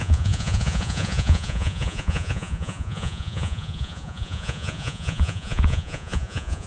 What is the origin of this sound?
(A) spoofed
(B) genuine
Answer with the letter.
A